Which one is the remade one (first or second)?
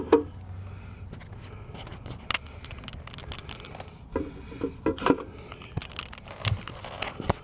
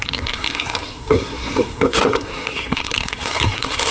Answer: second